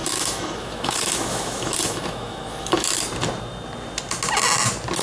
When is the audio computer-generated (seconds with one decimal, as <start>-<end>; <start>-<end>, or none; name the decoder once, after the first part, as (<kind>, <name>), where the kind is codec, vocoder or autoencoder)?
0.0-3.0 (autoencoder, DAC-VAE)